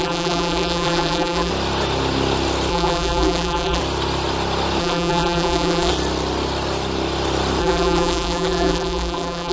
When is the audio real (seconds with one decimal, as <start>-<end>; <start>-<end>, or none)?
1.5-2.7; 3.8-4.8; 5.9-7.6